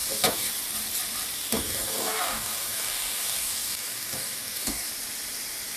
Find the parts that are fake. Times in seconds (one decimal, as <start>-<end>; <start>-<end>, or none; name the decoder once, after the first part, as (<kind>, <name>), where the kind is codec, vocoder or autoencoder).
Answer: 0.0-0.5 (codec, DAC); 1.5-4.9